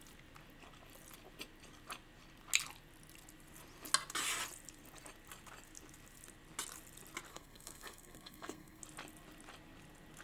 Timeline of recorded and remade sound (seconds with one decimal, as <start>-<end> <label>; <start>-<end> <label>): 0.0-7.3 recorded; 7.3-8.8 remade; 8.8-10.2 recorded